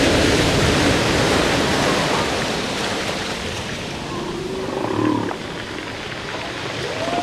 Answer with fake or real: fake